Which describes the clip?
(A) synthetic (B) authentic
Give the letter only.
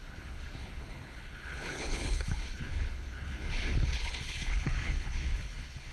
A